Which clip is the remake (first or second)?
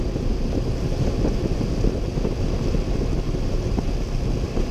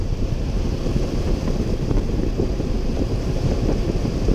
second